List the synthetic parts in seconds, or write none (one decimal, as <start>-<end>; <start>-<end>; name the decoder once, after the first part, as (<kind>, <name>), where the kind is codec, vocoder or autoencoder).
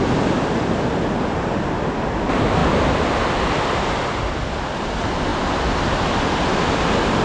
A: none